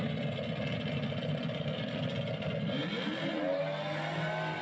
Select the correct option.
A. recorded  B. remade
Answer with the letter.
A